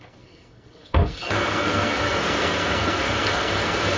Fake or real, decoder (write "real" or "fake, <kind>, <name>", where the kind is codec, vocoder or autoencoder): fake, codec, SNAC